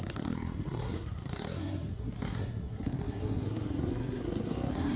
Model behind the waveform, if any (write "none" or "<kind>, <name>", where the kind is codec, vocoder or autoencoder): codec, SNAC